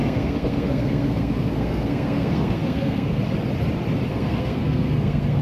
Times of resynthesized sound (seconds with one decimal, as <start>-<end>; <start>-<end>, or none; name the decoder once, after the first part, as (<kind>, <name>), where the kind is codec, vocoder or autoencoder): 0.0-3.2 (codec, SNAC); 4.1-5.4